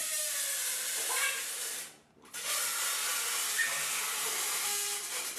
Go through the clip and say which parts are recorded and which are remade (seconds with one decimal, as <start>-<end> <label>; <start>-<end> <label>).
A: 0.0-5.4 recorded